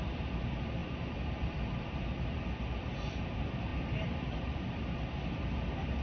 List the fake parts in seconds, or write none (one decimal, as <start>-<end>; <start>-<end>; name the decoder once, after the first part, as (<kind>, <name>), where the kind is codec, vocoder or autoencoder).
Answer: 0.0-0.8 (vocoder, BigVGAN v2); 1.4-6.0

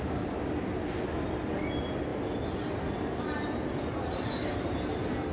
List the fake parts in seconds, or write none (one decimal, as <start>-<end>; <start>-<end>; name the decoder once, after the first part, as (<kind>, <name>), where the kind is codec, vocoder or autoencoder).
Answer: none